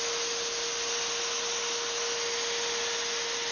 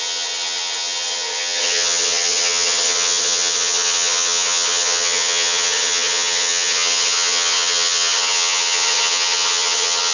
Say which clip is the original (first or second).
first